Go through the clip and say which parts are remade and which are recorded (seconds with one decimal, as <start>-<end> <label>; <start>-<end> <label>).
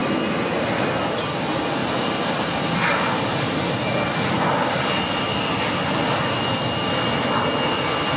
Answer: 0.0-8.2 recorded